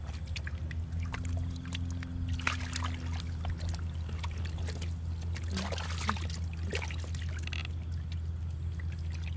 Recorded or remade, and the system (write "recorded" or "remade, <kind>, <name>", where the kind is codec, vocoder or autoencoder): recorded